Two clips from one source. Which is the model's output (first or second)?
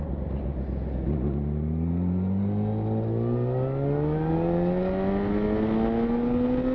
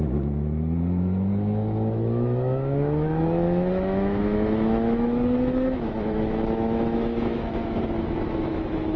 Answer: second